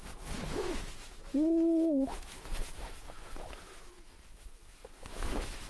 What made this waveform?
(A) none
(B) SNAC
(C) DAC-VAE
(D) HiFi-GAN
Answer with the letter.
C